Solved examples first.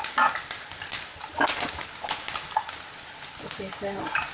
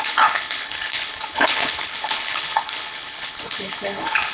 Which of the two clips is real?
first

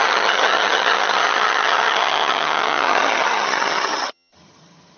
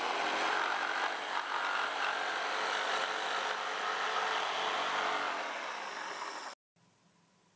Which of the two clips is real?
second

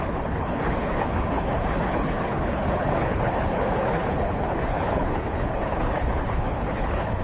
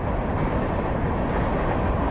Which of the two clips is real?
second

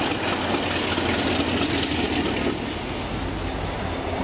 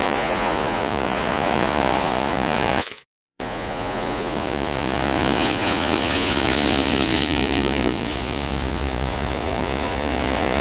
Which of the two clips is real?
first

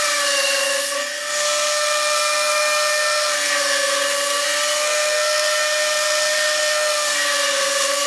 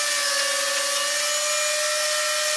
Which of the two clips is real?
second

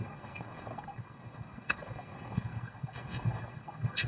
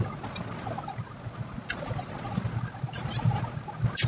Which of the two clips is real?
second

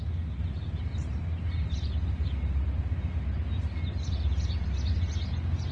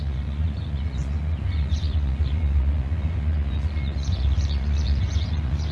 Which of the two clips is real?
first